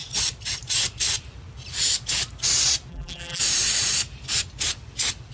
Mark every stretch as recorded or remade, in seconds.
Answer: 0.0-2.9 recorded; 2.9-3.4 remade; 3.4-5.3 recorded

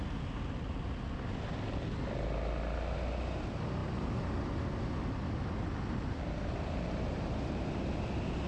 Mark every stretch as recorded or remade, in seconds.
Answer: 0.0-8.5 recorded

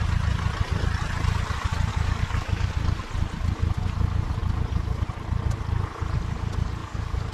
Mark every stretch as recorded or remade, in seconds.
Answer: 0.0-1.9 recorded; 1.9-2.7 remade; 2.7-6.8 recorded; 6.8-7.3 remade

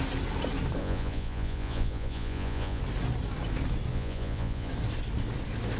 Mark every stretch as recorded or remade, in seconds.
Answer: 0.0-0.8 recorded; 0.8-2.8 remade; 2.8-3.9 recorded; 3.9-4.7 remade; 4.7-5.8 recorded

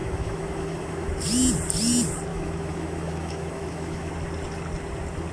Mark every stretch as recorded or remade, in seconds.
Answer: 0.0-1.1 remade; 1.1-2.3 recorded; 2.3-4.1 remade; 4.1-5.3 recorded

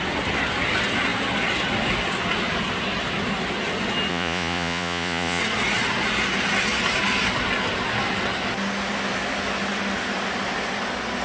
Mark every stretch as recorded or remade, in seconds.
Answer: 0.0-4.1 recorded; 4.1-5.4 remade; 5.4-11.2 recorded